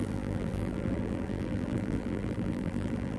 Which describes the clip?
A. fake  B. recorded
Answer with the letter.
A